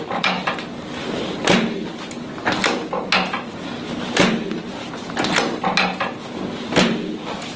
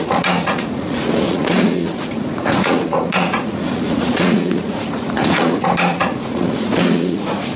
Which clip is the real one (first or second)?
first